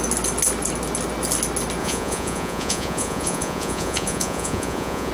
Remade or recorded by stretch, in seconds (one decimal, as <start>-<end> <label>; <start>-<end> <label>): 0.0-1.8 recorded; 1.8-5.1 remade